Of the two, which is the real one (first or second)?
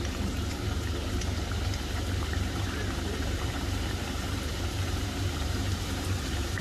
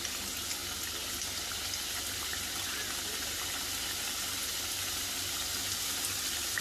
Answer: second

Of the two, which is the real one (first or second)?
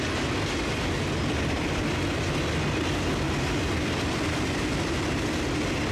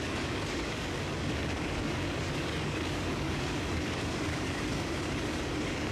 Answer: first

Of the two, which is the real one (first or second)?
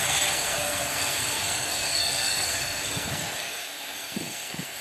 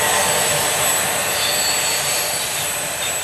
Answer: second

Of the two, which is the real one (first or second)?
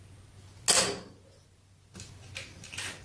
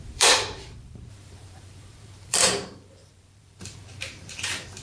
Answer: first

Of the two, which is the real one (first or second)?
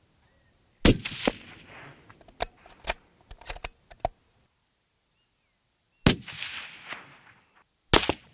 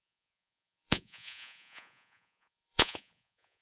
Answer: first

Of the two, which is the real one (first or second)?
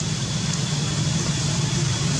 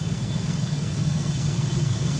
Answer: first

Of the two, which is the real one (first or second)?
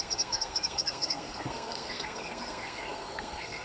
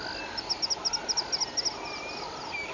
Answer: second